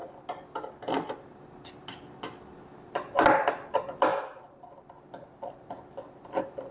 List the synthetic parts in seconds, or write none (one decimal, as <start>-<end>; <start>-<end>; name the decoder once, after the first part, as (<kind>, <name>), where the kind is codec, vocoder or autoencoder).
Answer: none